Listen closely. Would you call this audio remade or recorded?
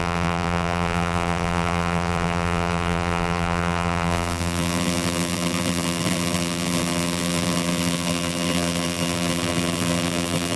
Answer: remade